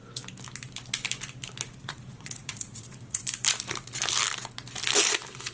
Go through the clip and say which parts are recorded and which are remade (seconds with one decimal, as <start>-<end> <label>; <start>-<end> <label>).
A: 0.0-1.8 recorded; 1.8-3.2 remade; 3.2-5.5 recorded